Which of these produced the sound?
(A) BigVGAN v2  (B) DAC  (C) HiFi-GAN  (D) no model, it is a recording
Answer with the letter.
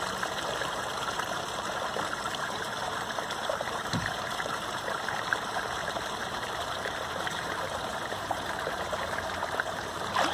A